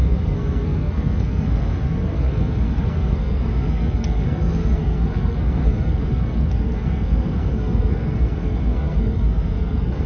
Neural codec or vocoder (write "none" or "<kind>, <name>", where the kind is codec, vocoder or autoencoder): codec, SNAC